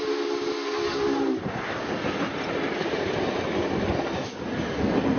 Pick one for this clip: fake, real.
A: real